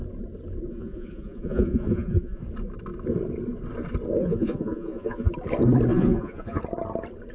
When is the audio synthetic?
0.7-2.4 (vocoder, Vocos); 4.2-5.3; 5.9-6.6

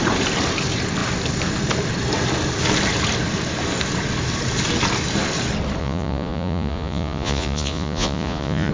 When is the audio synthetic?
5.8-8.7 (vocoder, Vocos)